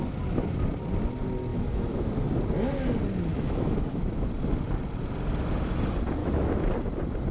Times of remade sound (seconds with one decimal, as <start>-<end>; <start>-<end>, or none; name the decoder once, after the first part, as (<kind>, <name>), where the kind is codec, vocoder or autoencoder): 1.5-2.1 (autoencoder, DAC-VAE); 3.3-4.3; 6.2-6.7

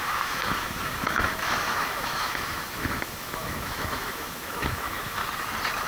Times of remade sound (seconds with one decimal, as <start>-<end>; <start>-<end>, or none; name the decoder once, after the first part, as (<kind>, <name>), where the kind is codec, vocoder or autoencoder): 0.0-5.2 (autoencoder, DAC-VAE)

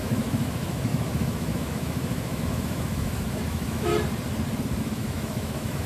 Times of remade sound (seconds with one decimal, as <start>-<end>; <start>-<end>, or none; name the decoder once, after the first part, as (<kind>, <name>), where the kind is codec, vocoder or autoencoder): 0.0-3.9 (autoencoder, DAC-VAE); 4.8-5.9

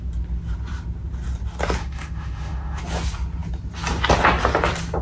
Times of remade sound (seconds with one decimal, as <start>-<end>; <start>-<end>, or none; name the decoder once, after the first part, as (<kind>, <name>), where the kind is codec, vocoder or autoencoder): 1.8-2.8 (autoencoder, DAC-VAE)

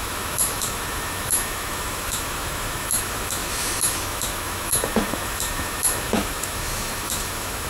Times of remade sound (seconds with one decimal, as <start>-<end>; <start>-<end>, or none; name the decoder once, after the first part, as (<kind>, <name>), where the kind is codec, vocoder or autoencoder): 0.0-7.7 (autoencoder, DAC-VAE)

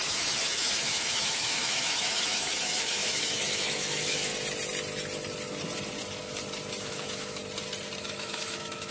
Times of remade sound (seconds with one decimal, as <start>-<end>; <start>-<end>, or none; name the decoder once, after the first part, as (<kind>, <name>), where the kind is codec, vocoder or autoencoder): 0.0-4.3 (autoencoder, DAC-VAE); 6.8-7.4; 8.0-8.9

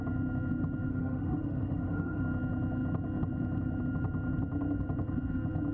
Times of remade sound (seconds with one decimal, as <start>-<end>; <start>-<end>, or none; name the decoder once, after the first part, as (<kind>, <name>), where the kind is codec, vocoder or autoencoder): 0.9-2.2 (autoencoder, DAC-VAE)

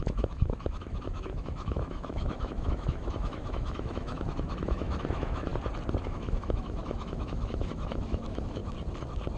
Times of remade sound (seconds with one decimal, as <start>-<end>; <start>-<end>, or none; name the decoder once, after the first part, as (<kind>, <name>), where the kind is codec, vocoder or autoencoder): 0.0-5.5 (autoencoder, DAC-VAE); 6.0-8.6